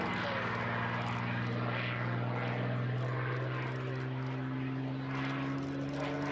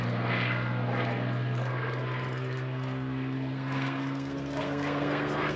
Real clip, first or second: first